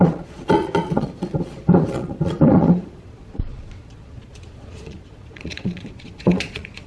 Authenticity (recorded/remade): remade